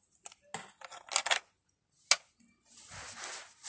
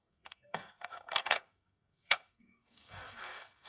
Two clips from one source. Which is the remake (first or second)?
second